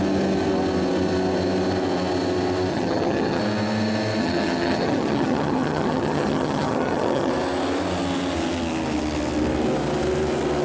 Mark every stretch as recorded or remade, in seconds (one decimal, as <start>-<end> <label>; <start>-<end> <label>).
0.0-2.7 recorded; 2.7-3.4 remade; 3.4-4.2 recorded; 4.2-7.3 remade; 7.3-10.6 recorded